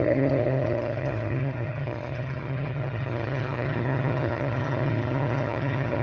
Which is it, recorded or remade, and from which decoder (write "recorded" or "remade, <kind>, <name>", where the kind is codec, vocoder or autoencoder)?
remade, vocoder, HiFi-GAN